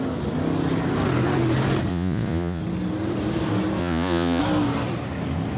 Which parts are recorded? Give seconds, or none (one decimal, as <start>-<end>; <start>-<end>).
0.0-1.9; 2.6-3.8; 4.4-5.6